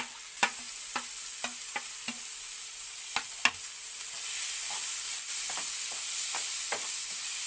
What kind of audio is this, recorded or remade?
recorded